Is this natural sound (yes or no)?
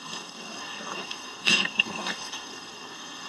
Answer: no